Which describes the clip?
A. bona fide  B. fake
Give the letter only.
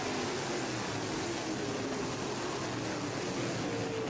A